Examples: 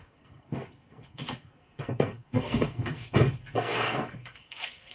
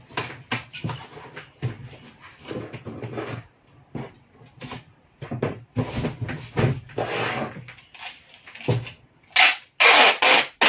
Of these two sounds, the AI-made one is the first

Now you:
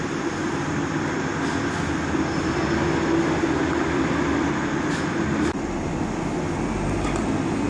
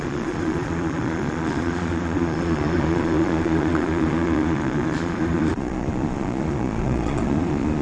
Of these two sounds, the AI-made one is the second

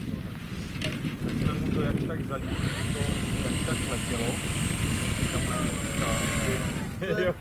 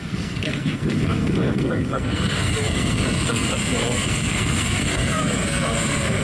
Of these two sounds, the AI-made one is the second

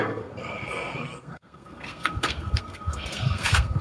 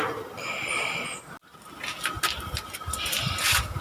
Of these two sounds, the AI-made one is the first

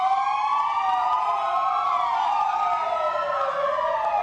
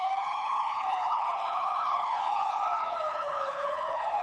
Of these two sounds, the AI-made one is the second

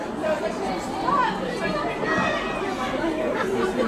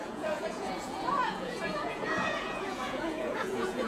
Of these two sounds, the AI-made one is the second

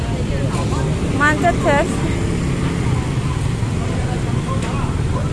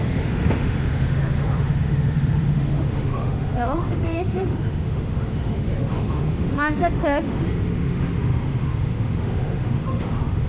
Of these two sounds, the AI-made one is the second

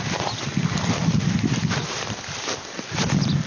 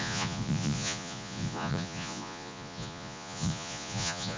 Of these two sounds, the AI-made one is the second